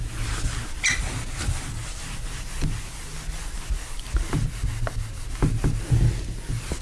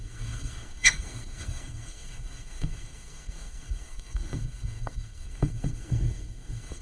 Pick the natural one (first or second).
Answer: first